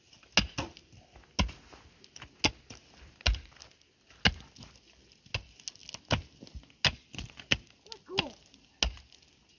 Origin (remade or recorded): recorded